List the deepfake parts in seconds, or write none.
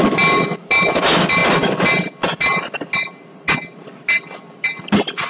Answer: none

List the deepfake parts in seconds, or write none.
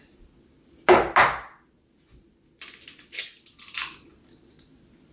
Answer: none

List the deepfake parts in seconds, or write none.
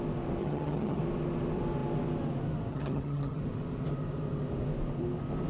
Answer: 0.4-1.0; 2.7-3.4